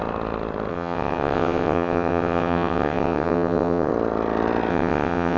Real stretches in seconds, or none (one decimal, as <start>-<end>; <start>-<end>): 0.0-0.7; 3.9-4.7

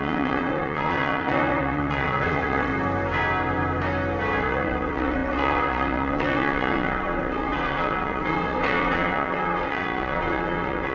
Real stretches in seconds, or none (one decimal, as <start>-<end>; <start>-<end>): 2.7-4.4

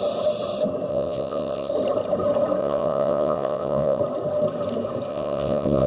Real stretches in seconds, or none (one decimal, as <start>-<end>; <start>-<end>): 0.0-0.9; 1.7-2.6; 4.0-5.1

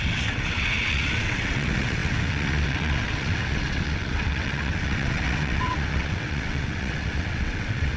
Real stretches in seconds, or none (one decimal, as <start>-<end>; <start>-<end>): none

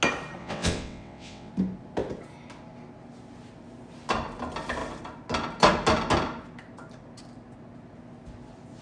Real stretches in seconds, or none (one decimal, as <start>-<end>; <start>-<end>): 0.0-0.4; 1.5-8.8

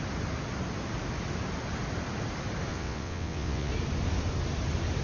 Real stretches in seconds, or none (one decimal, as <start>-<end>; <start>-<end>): 0.0-2.7; 3.7-5.0

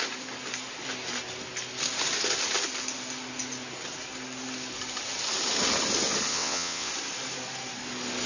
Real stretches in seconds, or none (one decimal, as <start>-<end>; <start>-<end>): 0.0-6.3; 6.9-8.3